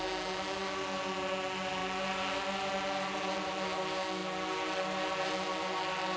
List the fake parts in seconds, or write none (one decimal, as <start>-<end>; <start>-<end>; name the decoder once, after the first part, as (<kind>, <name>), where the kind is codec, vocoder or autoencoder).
none